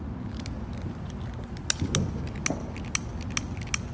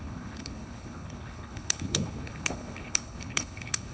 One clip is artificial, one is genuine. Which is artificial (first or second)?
second